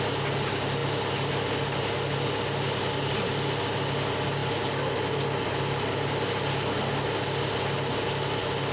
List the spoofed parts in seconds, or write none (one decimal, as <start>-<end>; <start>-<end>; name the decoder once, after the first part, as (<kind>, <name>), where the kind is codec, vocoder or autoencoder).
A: none